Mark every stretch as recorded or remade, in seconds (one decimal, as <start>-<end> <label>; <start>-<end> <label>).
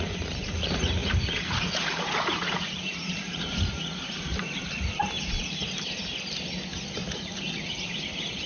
0.0-4.3 remade; 4.3-7.1 recorded; 7.1-8.5 remade